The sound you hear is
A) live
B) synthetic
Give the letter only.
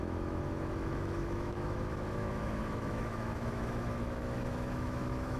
B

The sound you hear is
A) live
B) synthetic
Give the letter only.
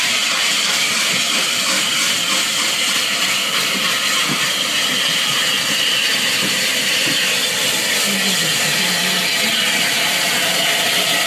A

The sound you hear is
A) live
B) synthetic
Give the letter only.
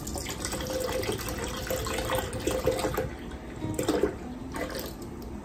A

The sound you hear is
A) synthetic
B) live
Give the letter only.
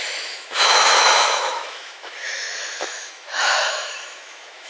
A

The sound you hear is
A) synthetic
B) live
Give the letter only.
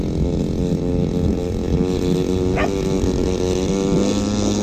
B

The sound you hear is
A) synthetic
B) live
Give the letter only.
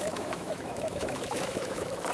A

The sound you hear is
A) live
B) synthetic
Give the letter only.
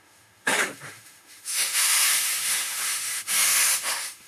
B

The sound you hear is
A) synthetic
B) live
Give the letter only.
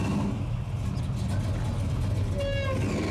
B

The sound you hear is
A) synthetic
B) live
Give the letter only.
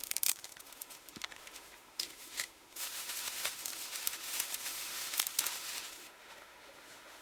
A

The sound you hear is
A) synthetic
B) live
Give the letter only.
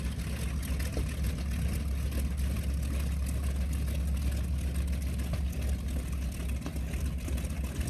B